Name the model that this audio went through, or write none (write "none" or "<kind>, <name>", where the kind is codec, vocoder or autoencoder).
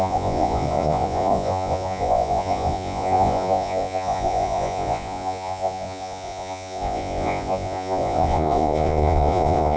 vocoder, Vocos